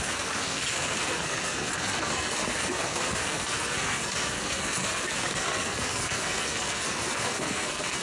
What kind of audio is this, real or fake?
fake